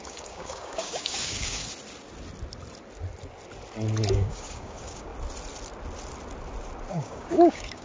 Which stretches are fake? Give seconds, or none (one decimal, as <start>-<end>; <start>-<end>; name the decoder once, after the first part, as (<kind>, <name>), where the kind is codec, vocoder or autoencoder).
0.0-1.6 (codec, DAC); 4.1-5.1; 6.9-7.8